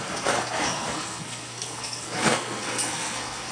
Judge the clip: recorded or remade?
remade